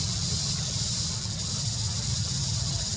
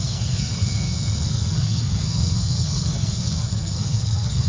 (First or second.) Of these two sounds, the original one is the first